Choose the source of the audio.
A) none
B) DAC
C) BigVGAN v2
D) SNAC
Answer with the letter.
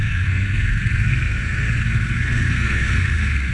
D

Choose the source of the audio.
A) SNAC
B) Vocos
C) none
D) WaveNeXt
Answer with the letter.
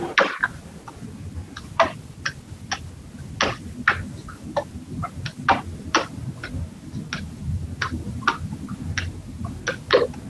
C